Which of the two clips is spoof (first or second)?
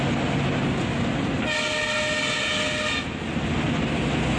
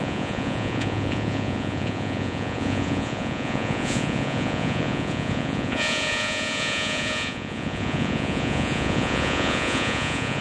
second